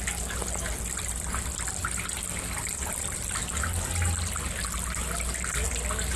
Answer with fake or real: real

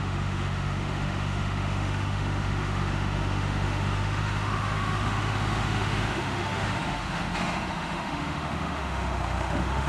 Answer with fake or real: fake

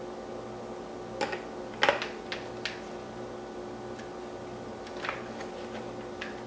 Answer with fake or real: real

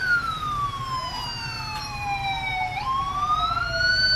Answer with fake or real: real